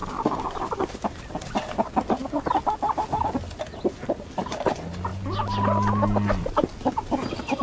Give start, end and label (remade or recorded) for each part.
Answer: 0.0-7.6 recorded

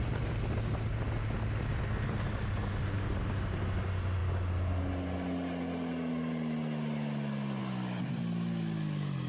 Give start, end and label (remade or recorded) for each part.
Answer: 0.0-9.3 recorded